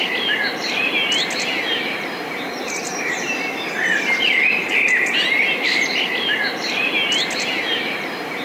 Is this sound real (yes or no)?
yes